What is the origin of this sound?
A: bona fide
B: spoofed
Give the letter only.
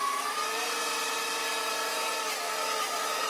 A